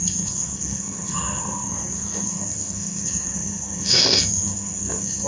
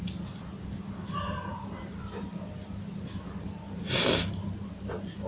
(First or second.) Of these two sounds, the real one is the second